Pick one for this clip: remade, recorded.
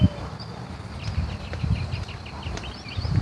recorded